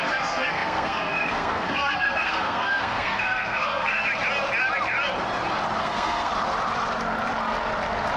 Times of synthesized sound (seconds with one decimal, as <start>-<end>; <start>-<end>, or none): 0.0-4.1; 5.8-6.3